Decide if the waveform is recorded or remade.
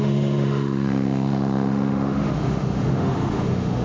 remade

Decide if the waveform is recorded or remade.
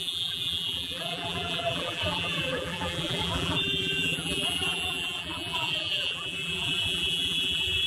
remade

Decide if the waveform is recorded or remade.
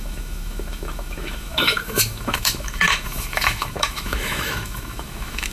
remade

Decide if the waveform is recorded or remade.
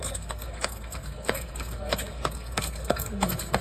remade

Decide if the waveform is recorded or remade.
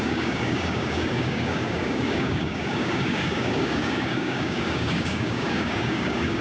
remade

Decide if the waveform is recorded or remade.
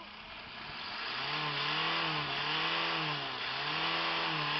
recorded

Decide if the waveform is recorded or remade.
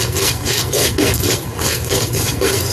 remade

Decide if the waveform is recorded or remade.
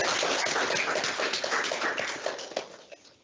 recorded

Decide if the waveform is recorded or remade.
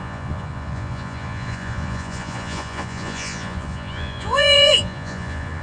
remade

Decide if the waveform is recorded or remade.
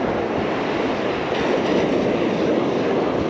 recorded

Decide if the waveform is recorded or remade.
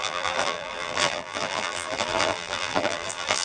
remade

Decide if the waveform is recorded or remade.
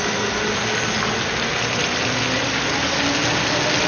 recorded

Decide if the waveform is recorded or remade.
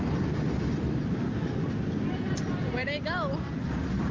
recorded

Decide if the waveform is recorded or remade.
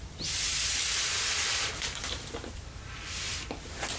recorded